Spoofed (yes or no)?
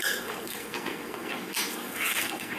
yes